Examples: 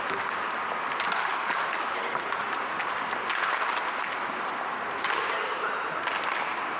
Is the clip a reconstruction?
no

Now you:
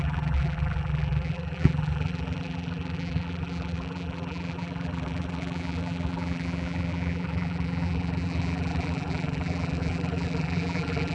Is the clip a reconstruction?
yes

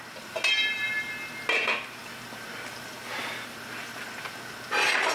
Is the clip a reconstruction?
no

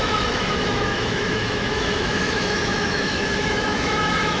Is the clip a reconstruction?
yes